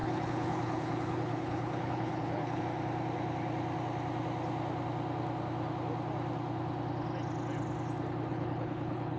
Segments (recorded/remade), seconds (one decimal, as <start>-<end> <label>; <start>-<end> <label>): 0.0-2.6 remade; 2.6-8.3 recorded; 8.3-9.2 remade